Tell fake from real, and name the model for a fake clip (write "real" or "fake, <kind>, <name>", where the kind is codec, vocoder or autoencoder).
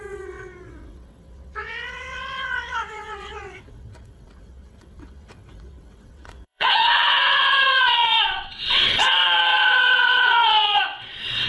fake, vocoder, WaveNeXt